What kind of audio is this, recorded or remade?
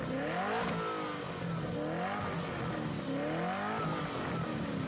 recorded